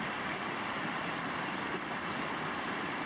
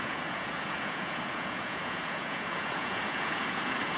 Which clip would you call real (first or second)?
first